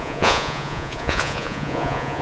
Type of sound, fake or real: fake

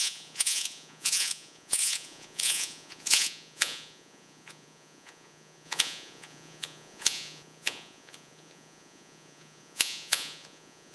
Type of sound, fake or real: fake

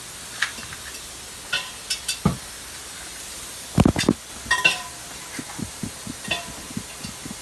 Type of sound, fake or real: real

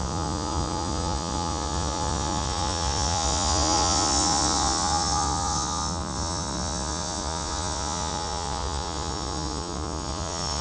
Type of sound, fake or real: fake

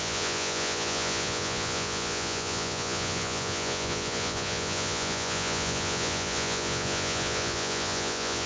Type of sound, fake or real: fake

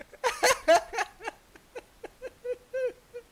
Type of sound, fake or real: real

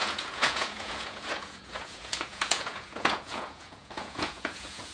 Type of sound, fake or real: fake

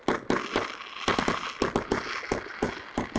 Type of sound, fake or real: real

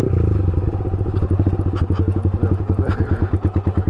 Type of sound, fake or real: real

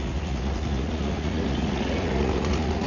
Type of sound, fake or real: fake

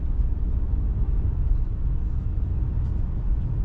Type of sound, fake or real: real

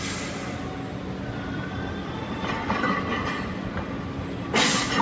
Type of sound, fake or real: real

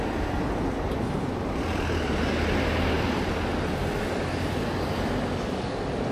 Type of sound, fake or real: real